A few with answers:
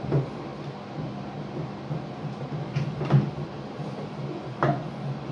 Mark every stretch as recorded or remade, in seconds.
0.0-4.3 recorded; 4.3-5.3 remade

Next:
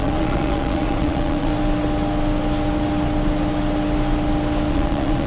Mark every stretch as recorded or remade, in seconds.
0.0-1.5 remade; 1.5-4.7 recorded; 4.7-5.3 remade

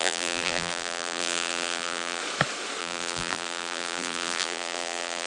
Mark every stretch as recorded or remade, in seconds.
0.0-2.2 remade; 2.2-2.8 recorded; 2.8-5.3 remade

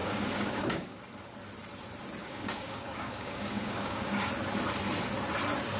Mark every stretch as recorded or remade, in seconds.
0.0-1.0 remade; 1.0-2.2 recorded; 2.2-4.3 remade; 4.3-5.8 recorded

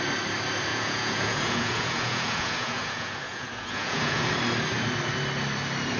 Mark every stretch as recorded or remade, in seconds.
0.0-0.7 recorded; 0.7-4.3 remade; 4.3-6.0 recorded

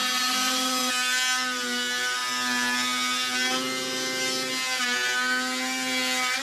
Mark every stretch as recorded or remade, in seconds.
0.0-0.9 remade; 0.9-6.4 recorded